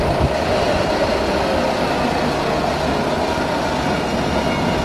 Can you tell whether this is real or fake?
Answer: real